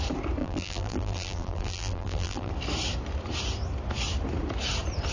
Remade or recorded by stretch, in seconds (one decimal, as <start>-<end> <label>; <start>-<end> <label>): 0.0-0.4 recorded; 0.4-2.5 remade; 2.5-5.1 recorded